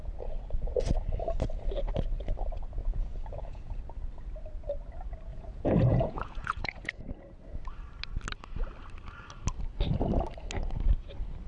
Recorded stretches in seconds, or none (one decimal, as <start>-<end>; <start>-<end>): 0.0-2.8; 3.8-5.3; 7.0-11.5

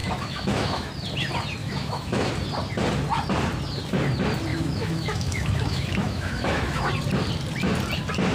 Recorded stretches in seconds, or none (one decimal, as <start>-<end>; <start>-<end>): 0.9-1.6; 2.3-4.5; 6.9-8.3

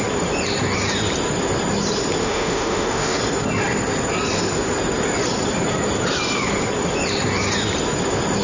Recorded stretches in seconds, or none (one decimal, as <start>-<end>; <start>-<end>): 0.0-2.2; 3.2-8.4

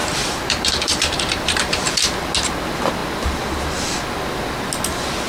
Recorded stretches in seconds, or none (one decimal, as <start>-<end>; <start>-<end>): 1.9-5.3

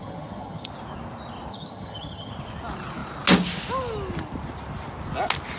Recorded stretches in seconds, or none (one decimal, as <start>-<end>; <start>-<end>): 0.7-1.5; 2.3-5.6